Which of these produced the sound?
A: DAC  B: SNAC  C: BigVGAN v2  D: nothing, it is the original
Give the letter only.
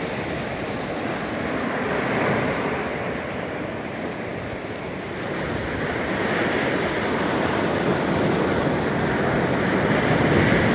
D